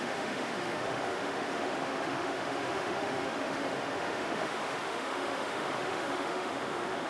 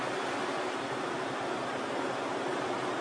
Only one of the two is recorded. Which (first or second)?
second